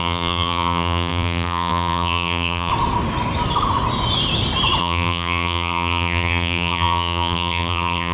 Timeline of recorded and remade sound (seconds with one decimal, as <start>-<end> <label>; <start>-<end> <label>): 0.0-2.7 remade; 2.7-4.8 recorded; 4.8-8.1 remade